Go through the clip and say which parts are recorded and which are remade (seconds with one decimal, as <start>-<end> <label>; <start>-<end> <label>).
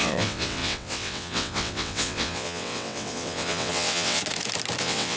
0.0-4.2 remade; 4.2-4.8 recorded; 4.8-5.2 remade